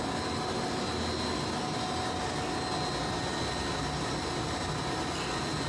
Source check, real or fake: real